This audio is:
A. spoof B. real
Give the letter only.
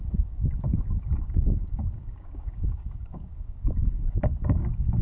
A